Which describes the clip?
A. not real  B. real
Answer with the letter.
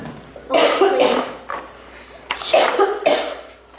B